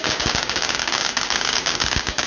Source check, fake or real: fake